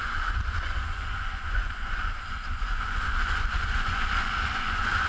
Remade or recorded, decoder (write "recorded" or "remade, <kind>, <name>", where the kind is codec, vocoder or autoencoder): remade, vocoder, Vocos